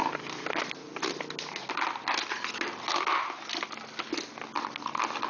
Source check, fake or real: real